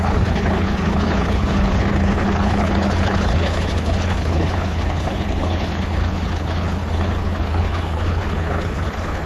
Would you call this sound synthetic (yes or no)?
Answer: yes